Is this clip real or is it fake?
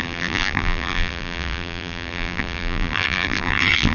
fake